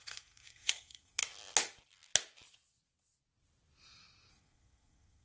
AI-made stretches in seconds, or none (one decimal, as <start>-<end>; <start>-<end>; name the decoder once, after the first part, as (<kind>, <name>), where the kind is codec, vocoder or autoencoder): 0.0-1.2 (codec, SNAC); 4.3-5.2